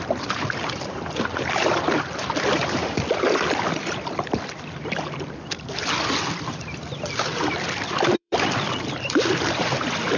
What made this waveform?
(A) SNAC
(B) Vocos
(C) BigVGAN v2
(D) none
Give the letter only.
C